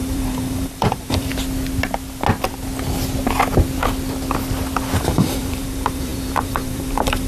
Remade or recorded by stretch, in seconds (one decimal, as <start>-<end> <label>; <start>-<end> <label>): 0.0-1.3 remade; 1.3-5.0 recorded; 5.0-7.3 remade